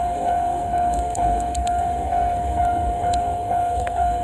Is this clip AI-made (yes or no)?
yes